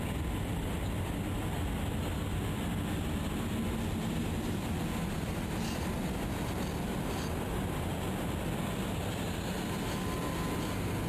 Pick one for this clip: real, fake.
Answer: real